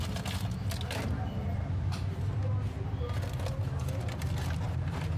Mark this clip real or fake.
real